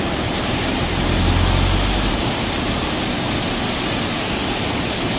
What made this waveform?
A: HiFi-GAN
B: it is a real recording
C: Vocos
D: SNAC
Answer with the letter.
B